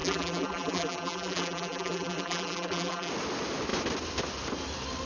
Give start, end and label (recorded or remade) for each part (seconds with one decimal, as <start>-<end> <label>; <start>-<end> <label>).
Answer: 0.0-3.1 remade; 3.1-5.1 recorded